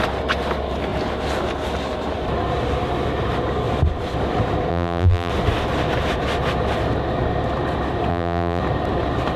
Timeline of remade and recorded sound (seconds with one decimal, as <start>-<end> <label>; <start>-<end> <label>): 0.0-4.7 recorded; 4.7-5.3 remade; 5.3-8.1 recorded; 8.1-8.6 remade; 8.6-9.4 recorded